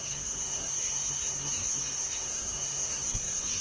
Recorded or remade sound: remade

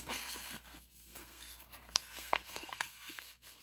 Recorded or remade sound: remade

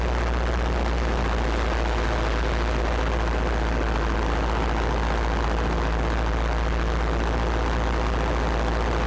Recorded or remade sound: recorded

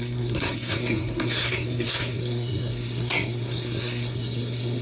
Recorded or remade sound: remade